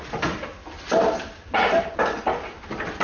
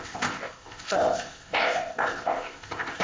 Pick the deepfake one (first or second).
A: second